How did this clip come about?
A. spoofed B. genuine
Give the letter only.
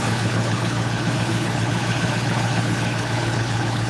A